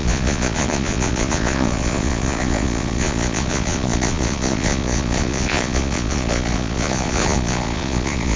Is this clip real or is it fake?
fake